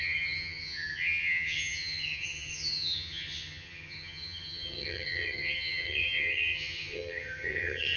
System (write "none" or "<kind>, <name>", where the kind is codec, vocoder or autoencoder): vocoder, HiFi-GAN